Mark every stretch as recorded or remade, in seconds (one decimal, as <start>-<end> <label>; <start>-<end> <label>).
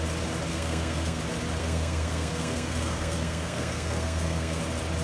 0.0-0.5 recorded; 0.5-1.2 remade; 1.2-1.6 recorded; 1.6-4.6 remade; 4.6-5.0 recorded